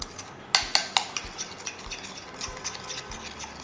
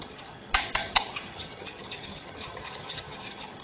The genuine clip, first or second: first